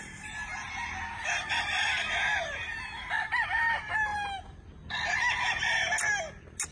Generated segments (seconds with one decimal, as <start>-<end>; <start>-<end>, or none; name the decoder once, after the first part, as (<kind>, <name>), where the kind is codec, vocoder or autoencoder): none